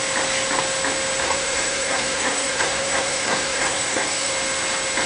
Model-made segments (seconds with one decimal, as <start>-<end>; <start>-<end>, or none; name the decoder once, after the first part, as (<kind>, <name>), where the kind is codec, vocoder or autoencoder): 1.2-4.3 (codec, SNAC)